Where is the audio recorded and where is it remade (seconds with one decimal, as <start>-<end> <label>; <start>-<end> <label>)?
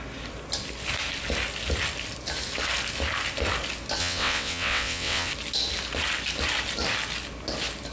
0.0-4.0 recorded; 4.0-5.3 remade; 5.3-7.9 recorded